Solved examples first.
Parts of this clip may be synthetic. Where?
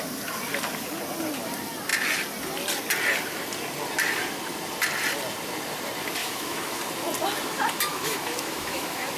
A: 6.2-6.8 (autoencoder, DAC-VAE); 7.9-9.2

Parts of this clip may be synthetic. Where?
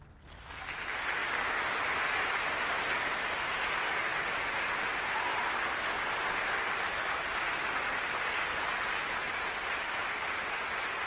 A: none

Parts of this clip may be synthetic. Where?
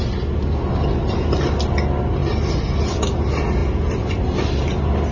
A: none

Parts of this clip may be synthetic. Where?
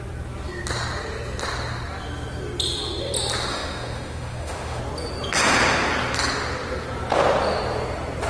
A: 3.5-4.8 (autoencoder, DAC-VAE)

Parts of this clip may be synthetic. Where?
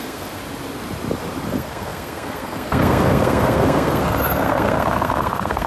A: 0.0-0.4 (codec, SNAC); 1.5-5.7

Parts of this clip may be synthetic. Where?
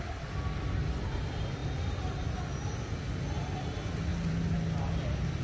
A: 1.6-2.4 (vocoder, BigVGAN v2); 4.1-4.8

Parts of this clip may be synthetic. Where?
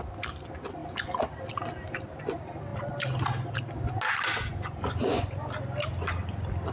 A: 4.5-5.5 (vocoder, Vocos)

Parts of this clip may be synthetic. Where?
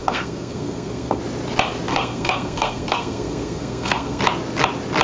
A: 0.0-1.2 (codec, SNAC); 1.9-4.2